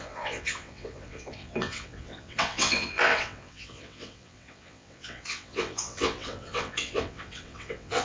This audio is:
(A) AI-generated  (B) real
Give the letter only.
A